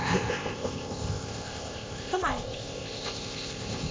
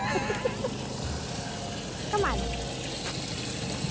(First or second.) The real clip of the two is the second